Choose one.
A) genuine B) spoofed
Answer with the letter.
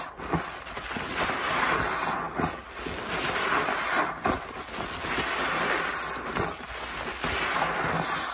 A